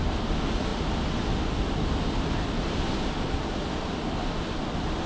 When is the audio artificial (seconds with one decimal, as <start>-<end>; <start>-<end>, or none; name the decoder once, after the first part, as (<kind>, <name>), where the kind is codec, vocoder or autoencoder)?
none